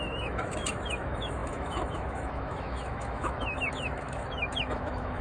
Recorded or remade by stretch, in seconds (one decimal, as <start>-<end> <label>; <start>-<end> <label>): 0.0-5.2 remade